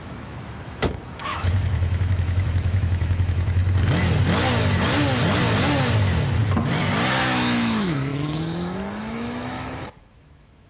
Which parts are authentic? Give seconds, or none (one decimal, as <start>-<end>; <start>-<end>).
3.6-7.2